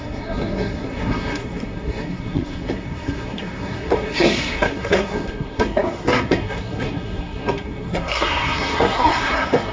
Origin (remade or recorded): remade